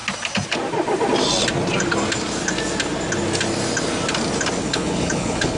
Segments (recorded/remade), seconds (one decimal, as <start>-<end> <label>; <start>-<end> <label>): 0.0-4.6 recorded; 4.6-5.6 remade